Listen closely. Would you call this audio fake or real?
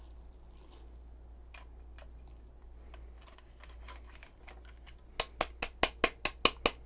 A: real